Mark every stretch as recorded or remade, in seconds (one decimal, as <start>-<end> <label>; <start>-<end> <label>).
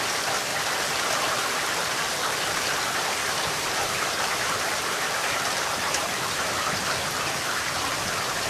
0.0-0.5 recorded; 0.5-2.7 remade; 2.7-3.2 recorded; 3.2-8.5 remade